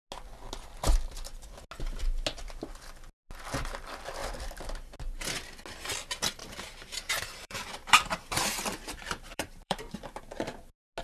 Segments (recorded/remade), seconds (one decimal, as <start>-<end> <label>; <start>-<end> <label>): 0.0-6.4 recorded; 6.4-10.2 remade; 10.2-11.0 recorded